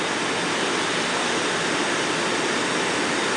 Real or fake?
real